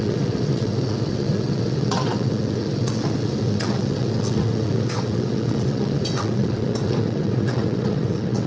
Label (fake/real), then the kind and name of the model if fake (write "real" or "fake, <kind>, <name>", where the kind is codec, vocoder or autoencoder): fake, vocoder, WaveNeXt